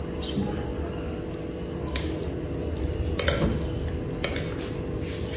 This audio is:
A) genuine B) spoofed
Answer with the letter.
A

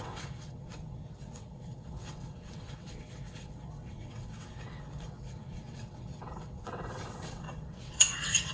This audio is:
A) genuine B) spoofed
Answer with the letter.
B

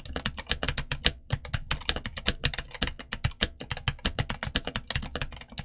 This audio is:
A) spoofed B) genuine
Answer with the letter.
B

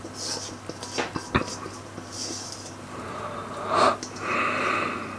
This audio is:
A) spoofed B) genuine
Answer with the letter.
B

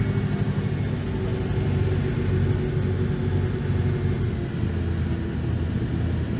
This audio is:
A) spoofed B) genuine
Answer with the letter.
B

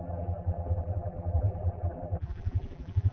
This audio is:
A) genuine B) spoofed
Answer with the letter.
B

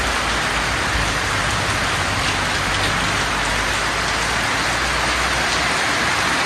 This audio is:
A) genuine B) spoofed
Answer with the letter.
A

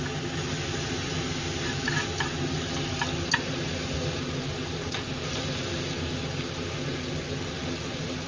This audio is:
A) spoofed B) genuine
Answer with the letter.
B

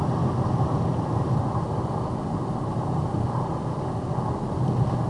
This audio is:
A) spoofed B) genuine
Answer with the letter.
B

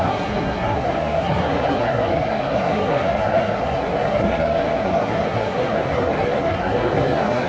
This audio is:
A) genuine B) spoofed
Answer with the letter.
B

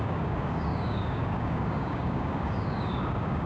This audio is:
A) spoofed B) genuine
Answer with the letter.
A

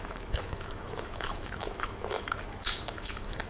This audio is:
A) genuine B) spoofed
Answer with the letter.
B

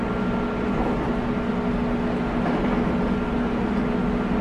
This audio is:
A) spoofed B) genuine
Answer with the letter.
B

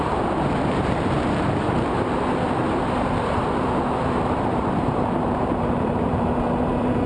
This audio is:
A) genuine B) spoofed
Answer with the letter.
B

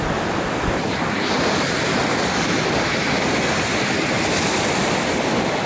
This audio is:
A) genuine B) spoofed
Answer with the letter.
A